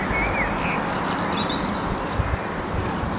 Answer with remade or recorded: recorded